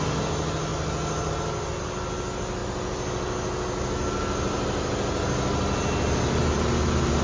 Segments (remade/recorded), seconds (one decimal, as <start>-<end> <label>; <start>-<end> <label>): 0.0-7.2 recorded

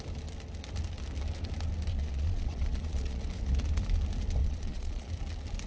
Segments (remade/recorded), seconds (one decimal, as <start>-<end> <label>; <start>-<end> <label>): 0.0-1.9 recorded; 1.9-3.2 remade; 3.2-4.4 recorded; 4.4-5.1 remade; 5.1-5.7 recorded

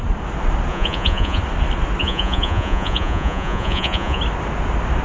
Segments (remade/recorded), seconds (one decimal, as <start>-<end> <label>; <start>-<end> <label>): 0.0-0.7 recorded; 0.7-1.4 remade; 1.4-2.0 recorded; 2.0-4.2 remade; 4.2-5.0 recorded

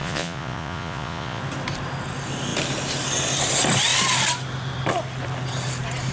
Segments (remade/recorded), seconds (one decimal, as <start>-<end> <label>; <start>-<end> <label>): 0.0-1.4 remade; 1.4-6.1 recorded

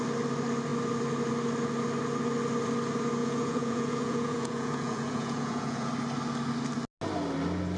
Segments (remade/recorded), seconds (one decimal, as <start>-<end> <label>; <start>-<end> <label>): 0.0-3.2 recorded; 3.2-5.9 remade; 5.9-7.8 recorded